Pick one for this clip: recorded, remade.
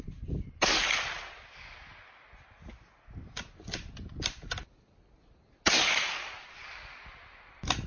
recorded